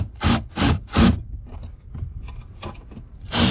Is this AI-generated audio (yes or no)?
no